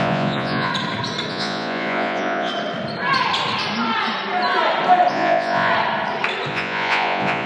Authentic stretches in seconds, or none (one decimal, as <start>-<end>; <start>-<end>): 0.7-1.3; 2.5-5.1; 5.7-6.5